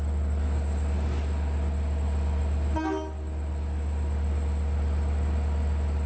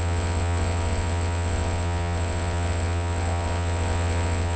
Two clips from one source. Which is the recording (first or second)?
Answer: first